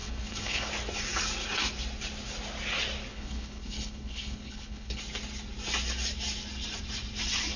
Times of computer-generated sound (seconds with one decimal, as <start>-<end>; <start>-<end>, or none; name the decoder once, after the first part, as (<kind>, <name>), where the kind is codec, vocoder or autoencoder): 0.0-0.7 (codec, HILCodec); 3.1-5.0

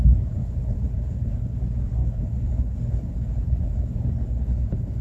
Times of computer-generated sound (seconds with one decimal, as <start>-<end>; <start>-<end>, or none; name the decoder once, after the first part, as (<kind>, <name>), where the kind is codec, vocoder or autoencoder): 0.4-1.6 (codec, HILCodec); 2.0-5.0

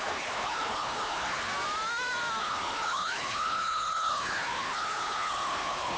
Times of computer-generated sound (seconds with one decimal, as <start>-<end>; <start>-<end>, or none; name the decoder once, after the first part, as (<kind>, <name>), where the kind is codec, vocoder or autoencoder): 0.0-1.5 (codec, HILCodec); 2.4-6.0

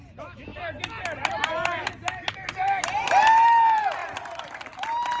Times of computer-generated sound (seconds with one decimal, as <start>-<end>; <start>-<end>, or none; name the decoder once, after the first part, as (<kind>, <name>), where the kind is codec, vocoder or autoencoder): none

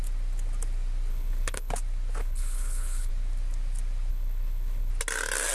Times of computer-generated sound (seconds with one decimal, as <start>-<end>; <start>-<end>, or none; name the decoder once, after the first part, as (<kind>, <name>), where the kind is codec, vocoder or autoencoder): 1.1-1.7 (codec, HILCodec); 2.2-3.1; 4.1-4.9